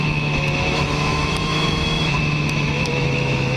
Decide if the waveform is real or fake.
fake